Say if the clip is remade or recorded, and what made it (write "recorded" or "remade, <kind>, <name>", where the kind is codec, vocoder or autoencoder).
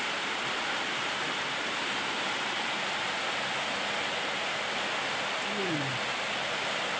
recorded